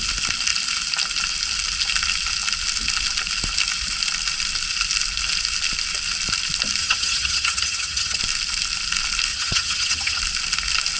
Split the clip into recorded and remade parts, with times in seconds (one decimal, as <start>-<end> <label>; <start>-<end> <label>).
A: 0.0-6.8 recorded; 6.8-8.2 remade; 8.2-9.3 recorded; 9.3-10.2 remade; 10.2-11.0 recorded

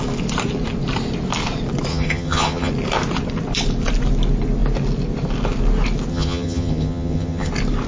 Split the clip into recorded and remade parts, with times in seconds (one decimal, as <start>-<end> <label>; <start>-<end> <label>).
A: 0.0-1.9 recorded; 1.9-2.7 remade; 2.7-6.1 recorded; 6.1-7.5 remade; 7.5-7.9 recorded